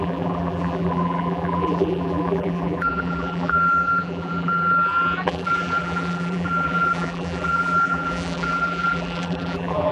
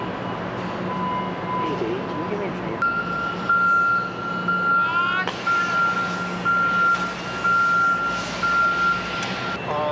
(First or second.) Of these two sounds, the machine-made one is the first